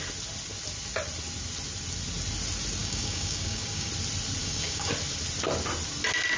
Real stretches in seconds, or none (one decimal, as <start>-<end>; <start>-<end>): 0.0-2.8; 3.9-4.4; 4.9-6.4